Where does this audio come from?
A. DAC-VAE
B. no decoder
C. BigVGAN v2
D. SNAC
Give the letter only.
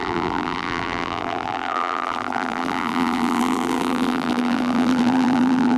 C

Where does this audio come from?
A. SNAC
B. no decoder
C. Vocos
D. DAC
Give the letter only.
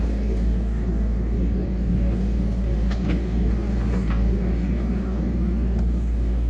D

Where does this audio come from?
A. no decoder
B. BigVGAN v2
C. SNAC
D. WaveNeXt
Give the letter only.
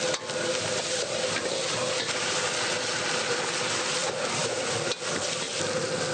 A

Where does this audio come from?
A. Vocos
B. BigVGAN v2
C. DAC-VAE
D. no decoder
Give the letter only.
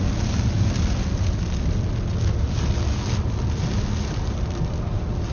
D